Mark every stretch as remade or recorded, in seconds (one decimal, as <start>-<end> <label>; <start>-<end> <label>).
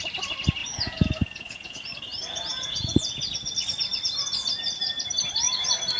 0.0-0.6 recorded; 0.6-1.9 remade; 1.9-2.5 recorded; 2.5-3.2 remade; 3.2-6.0 recorded